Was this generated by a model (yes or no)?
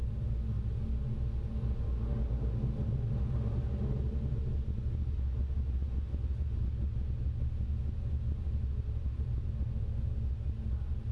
no